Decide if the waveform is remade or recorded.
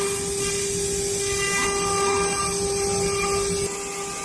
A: recorded